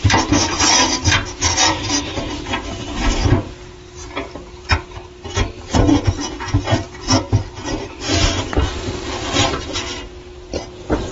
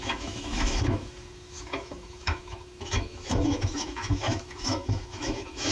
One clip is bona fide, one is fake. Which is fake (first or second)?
second